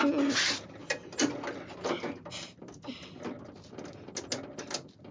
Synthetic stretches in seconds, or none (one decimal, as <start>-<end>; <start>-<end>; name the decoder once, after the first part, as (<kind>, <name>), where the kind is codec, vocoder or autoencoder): none